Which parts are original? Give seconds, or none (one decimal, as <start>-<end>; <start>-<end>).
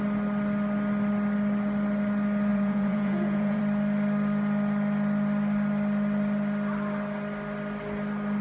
0.0-2.5; 3.6-8.4